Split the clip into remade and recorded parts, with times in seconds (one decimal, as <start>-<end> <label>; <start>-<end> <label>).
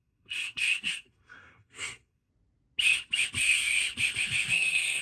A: 0.0-2.3 remade; 2.3-3.4 recorded; 3.4-3.8 remade; 3.8-4.5 recorded; 4.5-5.0 remade